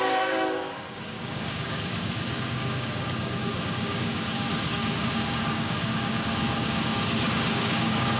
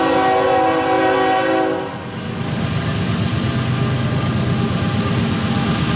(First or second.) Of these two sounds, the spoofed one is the first